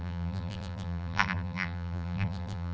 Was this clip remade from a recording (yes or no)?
yes